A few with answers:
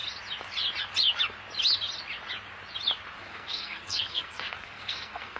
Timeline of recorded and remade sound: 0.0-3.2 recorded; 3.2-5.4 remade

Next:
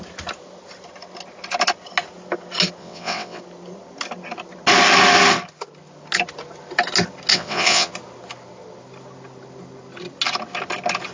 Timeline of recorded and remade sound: 0.0-2.8 recorded; 2.8-3.4 remade; 3.4-7.3 recorded; 7.3-7.9 remade; 7.9-11.1 recorded